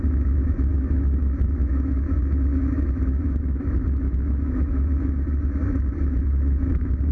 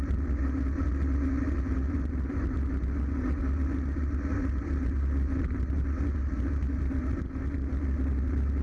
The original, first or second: second